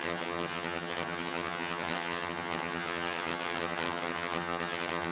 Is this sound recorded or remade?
remade